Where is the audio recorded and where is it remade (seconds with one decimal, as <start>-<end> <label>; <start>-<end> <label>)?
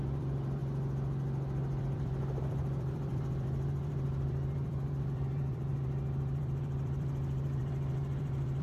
0.0-0.6 remade; 0.6-1.8 recorded; 1.8-8.6 remade